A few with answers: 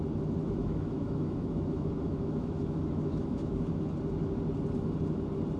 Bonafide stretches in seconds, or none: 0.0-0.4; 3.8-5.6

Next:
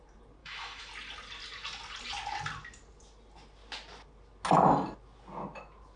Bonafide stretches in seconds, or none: 0.0-0.4; 0.9-6.0